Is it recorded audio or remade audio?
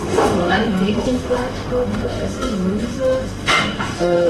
remade